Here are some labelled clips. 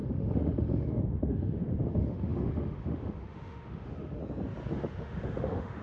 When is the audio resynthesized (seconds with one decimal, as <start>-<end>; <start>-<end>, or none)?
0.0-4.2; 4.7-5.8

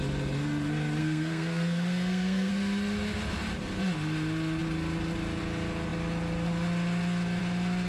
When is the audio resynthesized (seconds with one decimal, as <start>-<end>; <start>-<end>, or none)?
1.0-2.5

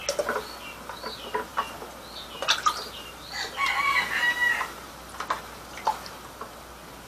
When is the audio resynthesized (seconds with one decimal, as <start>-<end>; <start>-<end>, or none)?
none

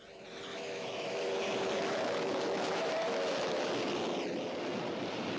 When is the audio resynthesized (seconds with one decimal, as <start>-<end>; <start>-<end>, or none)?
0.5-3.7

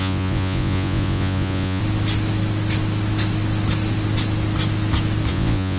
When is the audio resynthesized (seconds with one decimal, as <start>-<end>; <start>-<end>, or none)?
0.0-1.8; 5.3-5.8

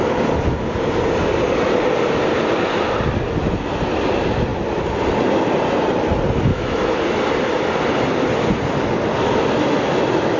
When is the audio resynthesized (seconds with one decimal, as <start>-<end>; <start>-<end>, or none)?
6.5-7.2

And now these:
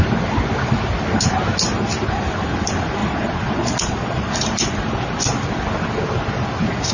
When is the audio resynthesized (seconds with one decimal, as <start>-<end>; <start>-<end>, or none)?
3.0-4.4